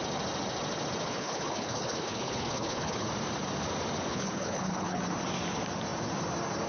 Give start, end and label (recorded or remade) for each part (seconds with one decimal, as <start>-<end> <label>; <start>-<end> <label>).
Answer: 0.0-1.1 recorded; 1.1-3.1 remade; 3.1-4.1 recorded; 4.1-5.0 remade; 5.0-6.7 recorded